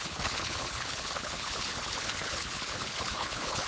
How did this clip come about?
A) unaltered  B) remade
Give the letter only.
B